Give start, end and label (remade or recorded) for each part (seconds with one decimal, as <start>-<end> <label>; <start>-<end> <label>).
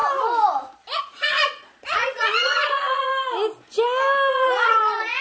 0.0-1.0 recorded; 1.0-3.1 remade; 3.1-4.3 recorded; 4.3-5.2 remade